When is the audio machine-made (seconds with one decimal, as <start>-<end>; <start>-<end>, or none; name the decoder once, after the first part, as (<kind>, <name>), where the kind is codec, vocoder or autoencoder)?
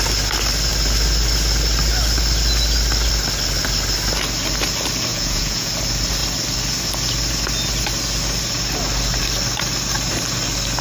5.1-5.7 (vocoder, Vocos)